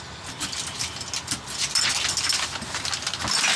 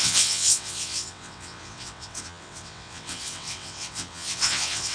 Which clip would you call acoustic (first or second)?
first